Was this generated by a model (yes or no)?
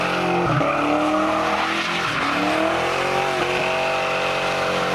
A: no